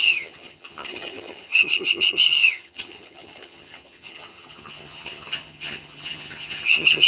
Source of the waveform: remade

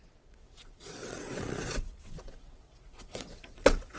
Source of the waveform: remade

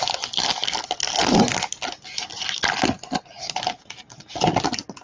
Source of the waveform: recorded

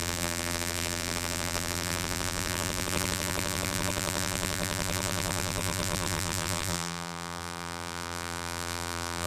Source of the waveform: remade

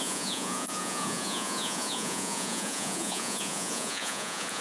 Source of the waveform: remade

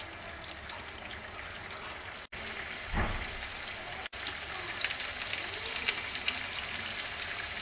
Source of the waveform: recorded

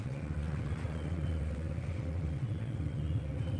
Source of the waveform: remade